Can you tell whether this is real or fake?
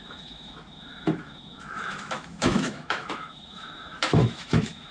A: fake